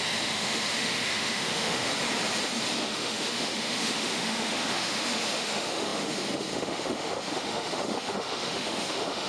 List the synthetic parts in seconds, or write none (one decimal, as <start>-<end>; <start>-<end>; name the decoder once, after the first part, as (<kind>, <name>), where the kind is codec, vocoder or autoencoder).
0.0-1.9 (autoencoder, DAC-VAE); 2.8-9.3